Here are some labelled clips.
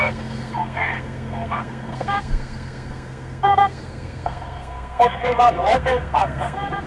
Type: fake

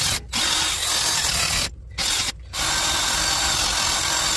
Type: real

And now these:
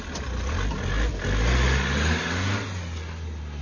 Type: real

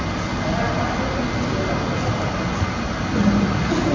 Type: real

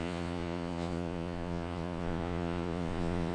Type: fake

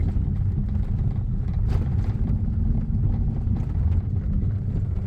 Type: real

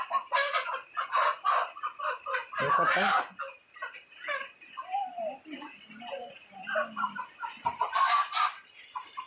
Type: real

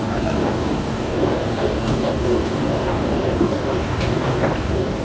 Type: fake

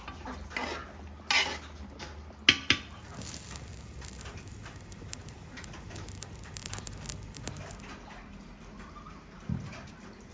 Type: real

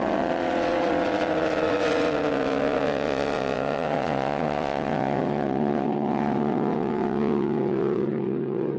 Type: fake